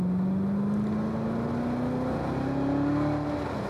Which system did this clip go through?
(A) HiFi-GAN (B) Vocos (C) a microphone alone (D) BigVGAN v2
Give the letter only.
C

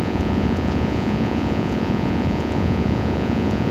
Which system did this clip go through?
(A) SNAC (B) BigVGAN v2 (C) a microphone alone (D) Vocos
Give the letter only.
D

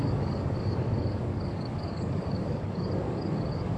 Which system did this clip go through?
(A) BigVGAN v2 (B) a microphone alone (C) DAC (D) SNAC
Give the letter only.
C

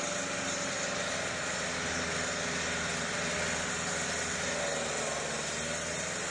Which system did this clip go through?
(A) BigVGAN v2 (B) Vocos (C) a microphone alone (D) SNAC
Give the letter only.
C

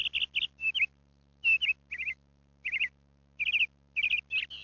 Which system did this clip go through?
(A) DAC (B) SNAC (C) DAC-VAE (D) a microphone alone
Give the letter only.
D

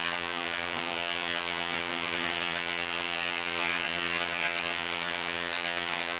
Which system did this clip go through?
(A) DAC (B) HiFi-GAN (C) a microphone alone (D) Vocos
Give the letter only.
B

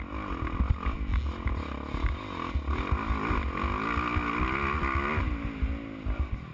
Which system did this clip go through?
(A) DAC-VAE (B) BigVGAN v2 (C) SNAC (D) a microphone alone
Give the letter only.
D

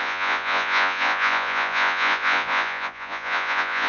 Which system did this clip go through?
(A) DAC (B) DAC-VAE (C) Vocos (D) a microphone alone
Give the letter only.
C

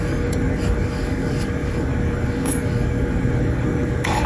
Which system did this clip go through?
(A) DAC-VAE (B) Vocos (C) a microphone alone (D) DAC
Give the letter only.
D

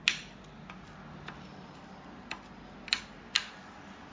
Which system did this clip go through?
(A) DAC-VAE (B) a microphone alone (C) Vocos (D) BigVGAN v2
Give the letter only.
B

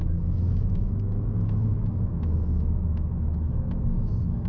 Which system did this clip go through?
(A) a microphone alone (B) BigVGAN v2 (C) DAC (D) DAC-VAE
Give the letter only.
D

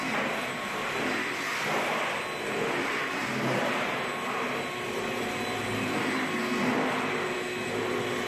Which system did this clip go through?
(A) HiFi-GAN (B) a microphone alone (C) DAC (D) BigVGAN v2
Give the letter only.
B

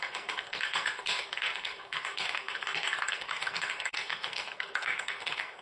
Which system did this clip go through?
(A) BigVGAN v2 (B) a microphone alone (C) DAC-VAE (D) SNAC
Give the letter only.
D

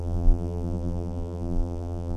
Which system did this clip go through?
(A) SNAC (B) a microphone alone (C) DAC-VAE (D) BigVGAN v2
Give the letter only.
D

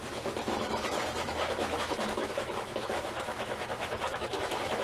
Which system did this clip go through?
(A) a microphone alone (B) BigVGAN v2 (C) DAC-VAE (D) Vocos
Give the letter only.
C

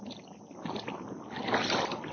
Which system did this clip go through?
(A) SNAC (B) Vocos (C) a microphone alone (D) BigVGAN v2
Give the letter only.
C